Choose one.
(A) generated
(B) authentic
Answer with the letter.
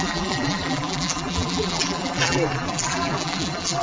A